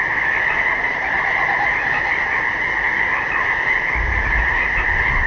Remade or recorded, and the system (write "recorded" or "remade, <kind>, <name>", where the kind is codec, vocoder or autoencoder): recorded